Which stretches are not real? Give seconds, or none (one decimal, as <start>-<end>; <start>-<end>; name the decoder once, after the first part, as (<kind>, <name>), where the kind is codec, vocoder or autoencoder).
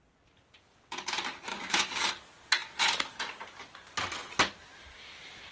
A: 1.5-2.1 (codec, DAC)